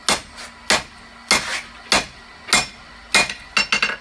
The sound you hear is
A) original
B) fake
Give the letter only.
A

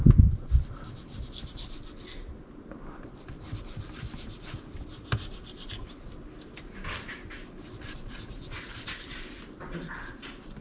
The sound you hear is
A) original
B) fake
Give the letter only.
A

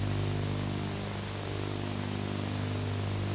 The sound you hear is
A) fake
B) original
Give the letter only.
B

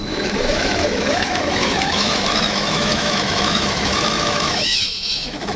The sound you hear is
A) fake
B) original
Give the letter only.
A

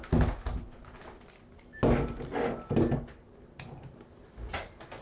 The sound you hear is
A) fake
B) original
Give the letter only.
B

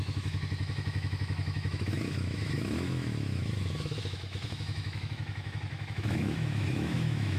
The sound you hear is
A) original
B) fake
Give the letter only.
B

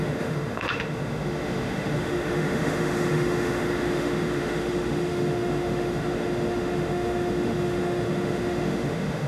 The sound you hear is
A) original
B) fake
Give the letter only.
B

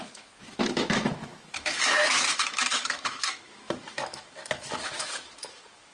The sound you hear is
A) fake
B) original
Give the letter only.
A